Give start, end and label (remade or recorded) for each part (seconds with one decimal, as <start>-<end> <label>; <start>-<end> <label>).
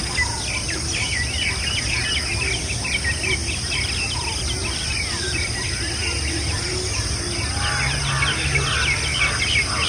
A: 0.0-9.9 recorded